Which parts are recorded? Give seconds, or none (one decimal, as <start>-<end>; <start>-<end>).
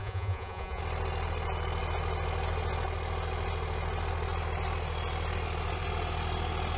0.8-6.8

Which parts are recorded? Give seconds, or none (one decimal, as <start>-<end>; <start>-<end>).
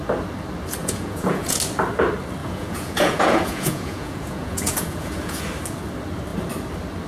0.0-0.8; 1.6-2.4; 5.4-7.1